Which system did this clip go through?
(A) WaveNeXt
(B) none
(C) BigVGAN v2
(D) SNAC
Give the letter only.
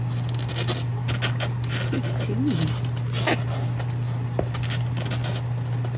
B